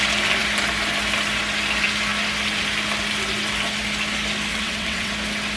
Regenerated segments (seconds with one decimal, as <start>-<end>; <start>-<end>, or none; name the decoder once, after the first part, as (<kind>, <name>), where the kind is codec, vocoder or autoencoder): 4.5-5.1 (vocoder, WaveNeXt)